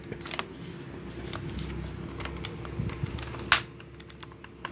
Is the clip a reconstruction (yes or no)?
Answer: no